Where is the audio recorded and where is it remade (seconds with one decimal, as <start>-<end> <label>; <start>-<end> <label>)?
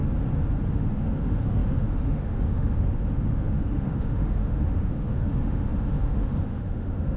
0.0-0.7 recorded; 0.7-7.2 remade